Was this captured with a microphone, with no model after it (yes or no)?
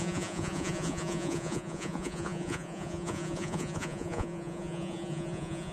no